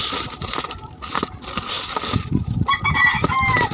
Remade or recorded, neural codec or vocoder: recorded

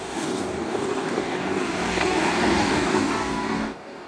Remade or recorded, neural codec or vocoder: remade, codec, DAC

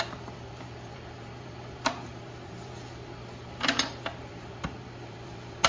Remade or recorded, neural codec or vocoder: remade, vocoder, BigVGAN v2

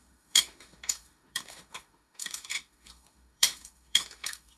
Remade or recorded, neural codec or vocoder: remade, autoencoder, DAC-VAE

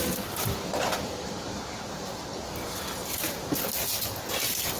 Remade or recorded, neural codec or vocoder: recorded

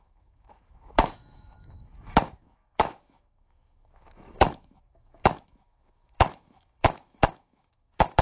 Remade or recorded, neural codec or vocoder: remade, autoencoder, DAC-VAE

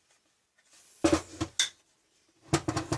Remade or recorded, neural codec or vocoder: recorded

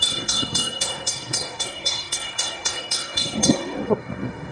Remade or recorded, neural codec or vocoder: remade, codec, SNAC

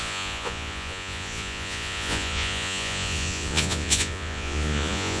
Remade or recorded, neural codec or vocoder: remade, vocoder, Vocos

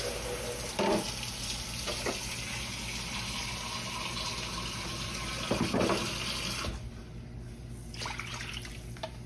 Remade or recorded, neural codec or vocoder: recorded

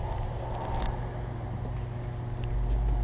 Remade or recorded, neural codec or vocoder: recorded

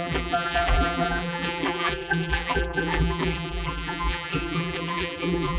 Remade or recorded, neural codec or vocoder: remade, vocoder, BigVGAN v2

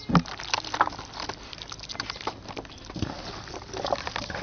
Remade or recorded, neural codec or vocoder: recorded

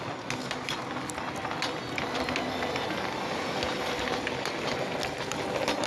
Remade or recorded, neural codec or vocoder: recorded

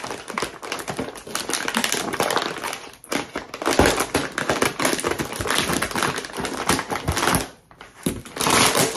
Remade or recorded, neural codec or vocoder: recorded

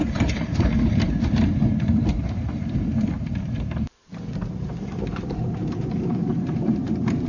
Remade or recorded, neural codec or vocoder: remade, vocoder, BigVGAN v2